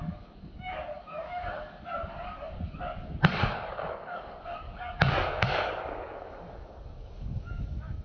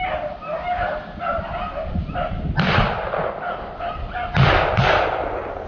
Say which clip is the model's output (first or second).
first